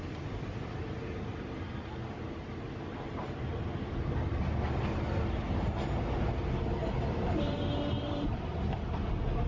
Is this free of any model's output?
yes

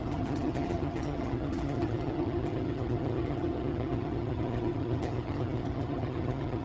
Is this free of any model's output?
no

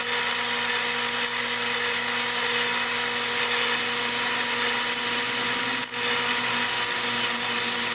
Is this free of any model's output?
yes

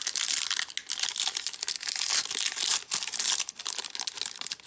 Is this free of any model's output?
yes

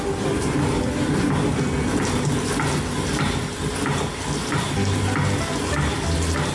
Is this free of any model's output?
yes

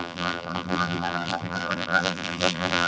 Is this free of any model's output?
no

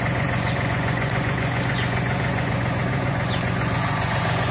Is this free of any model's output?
no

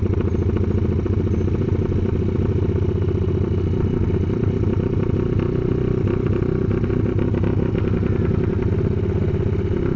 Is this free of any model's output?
yes